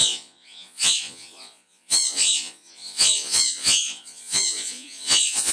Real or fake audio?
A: fake